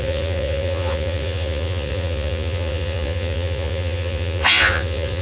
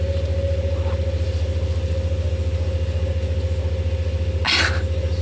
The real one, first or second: second